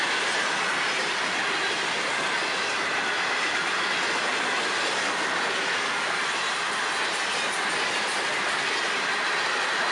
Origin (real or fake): real